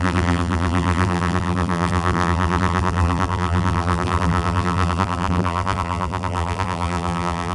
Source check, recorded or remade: remade